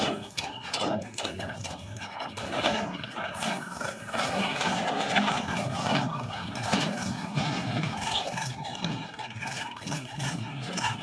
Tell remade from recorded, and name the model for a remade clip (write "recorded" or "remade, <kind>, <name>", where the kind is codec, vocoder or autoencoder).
remade, codec, SNAC